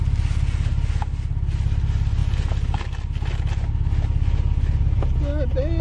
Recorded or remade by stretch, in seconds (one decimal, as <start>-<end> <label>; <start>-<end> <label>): 0.0-5.8 recorded